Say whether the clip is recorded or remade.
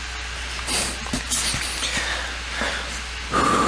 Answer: recorded